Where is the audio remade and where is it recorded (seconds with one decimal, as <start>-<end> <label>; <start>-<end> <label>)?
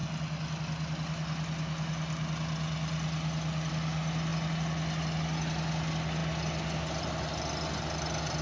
0.0-8.4 recorded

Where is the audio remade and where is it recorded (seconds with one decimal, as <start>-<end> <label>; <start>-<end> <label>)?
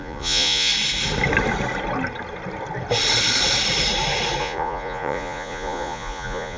0.0-0.7 remade; 0.7-4.4 recorded; 4.4-6.6 remade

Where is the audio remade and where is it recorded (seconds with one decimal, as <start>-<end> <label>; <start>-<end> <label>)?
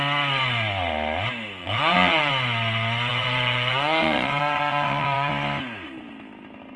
0.0-1.6 recorded; 1.6-2.3 remade; 2.3-3.1 recorded; 3.1-5.3 remade; 5.3-6.8 recorded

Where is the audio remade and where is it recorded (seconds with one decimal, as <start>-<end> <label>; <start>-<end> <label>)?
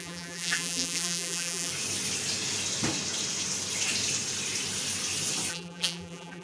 0.0-1.7 remade; 1.7-5.5 recorded; 5.5-6.4 remade